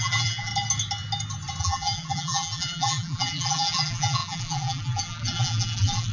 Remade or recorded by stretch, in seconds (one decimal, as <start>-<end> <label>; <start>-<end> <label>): 0.0-0.5 remade; 0.5-1.6 recorded; 1.6-6.1 remade

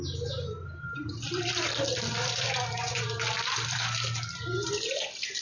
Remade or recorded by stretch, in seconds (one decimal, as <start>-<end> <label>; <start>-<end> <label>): 0.0-0.6 recorded; 0.6-3.8 remade; 3.8-5.4 recorded

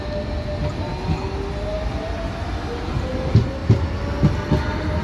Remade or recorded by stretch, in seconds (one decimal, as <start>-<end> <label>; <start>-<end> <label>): 0.0-5.0 recorded

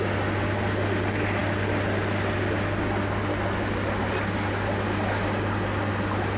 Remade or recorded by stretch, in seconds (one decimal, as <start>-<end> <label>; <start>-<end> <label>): 0.0-1.4 recorded; 1.4-4.0 remade; 4.0-6.4 recorded

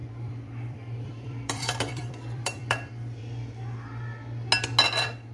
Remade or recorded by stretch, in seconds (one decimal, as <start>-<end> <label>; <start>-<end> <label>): 0.0-3.2 remade; 3.2-5.3 recorded

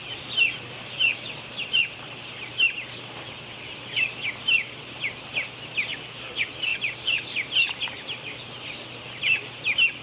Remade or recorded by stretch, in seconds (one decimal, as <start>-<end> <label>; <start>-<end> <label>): 0.0-10.0 recorded